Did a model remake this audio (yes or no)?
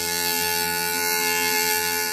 yes